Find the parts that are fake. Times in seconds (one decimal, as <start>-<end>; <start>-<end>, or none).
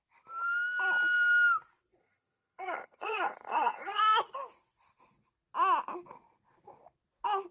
2.0-4.0